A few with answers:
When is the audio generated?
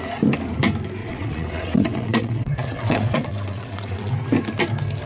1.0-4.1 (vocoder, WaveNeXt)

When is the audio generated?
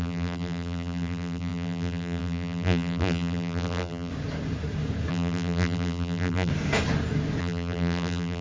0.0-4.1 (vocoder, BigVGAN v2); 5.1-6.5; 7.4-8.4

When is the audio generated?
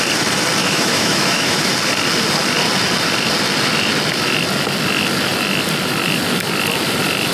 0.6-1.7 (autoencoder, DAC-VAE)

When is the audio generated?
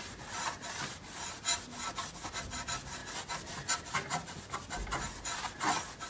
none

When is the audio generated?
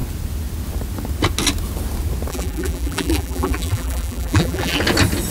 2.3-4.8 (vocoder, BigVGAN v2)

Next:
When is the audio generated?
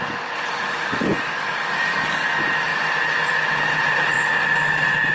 0.5-2.3 (codec, DAC)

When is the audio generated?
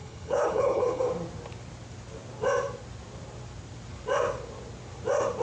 0.0-1.0 (codec, HILCodec)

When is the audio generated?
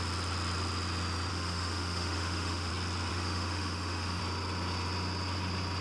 1.3-2.7 (autoencoder, DAC-VAE); 3.1-4.2